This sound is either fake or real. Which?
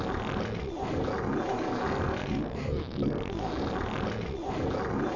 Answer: real